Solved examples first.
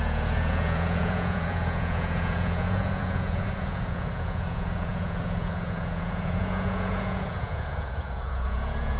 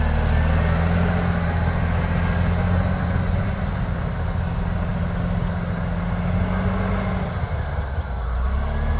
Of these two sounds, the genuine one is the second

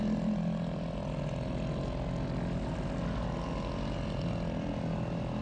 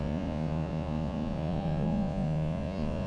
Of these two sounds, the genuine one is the first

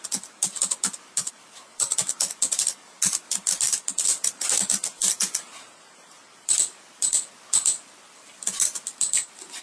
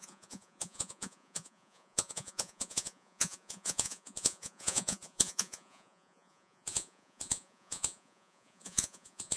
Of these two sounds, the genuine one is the first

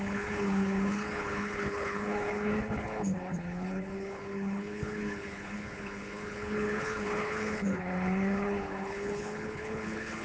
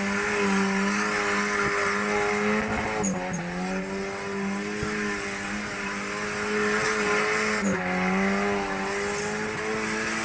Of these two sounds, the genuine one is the second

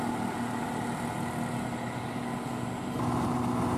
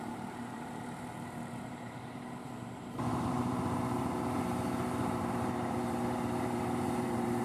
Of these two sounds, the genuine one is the first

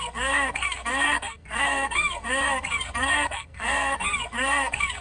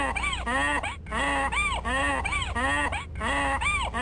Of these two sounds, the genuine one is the second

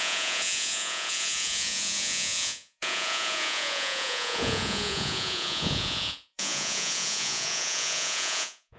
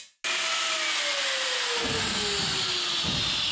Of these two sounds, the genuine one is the second